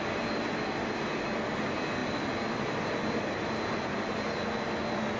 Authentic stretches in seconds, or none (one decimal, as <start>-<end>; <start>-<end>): 0.0-5.2